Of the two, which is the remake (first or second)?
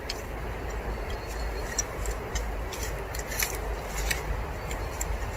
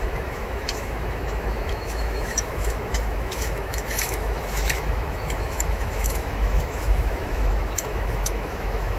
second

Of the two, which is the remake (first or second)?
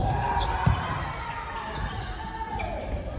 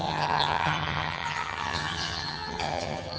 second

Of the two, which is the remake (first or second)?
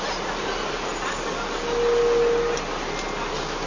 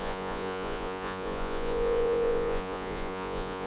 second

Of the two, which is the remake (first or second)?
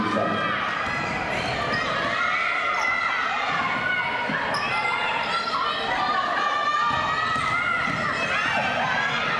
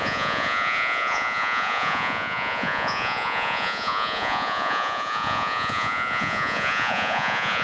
second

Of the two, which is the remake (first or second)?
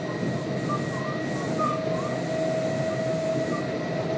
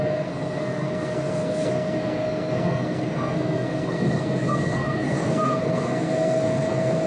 second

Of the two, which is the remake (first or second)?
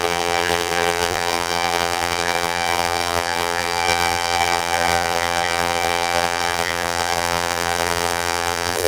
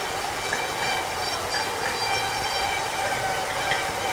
first